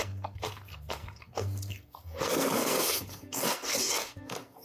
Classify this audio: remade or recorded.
remade